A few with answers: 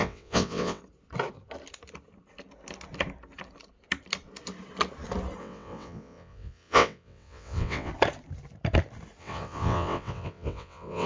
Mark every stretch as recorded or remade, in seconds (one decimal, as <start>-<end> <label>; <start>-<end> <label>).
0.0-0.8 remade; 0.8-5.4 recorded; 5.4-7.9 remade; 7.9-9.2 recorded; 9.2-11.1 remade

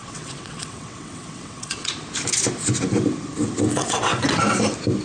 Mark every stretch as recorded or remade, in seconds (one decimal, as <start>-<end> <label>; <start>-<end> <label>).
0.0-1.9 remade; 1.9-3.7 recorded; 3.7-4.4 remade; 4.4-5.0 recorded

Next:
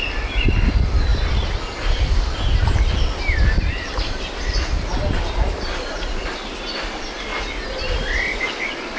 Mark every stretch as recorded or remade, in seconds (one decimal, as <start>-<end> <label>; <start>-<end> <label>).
0.0-9.0 recorded